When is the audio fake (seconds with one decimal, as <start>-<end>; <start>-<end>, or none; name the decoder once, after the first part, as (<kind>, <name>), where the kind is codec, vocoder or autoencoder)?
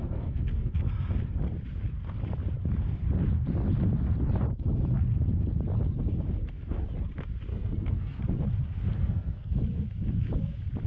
0.0-0.9 (codec, SNAC); 7.5-8.2; 9.0-9.6